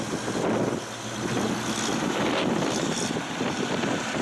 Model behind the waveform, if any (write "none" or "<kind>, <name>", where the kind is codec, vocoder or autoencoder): none